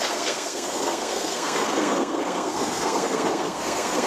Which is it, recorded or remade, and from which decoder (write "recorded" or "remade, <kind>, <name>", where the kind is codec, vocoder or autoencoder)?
remade, codec, SNAC